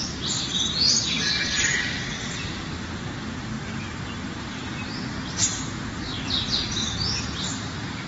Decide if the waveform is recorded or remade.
recorded